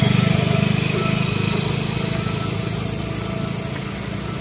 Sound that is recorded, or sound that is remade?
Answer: recorded